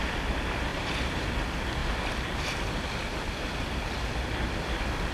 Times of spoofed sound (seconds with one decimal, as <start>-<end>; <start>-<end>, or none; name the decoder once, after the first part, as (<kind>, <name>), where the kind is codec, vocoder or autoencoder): 0.7-1.3 (vocoder, BigVGAN v2)